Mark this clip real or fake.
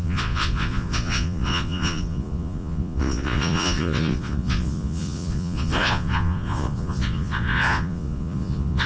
fake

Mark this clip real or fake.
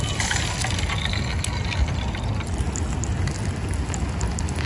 real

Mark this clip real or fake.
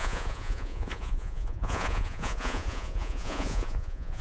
fake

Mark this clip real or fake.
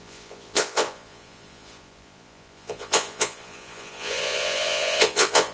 fake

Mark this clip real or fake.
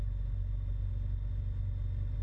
real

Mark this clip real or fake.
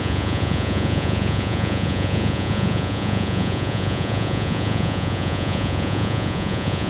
fake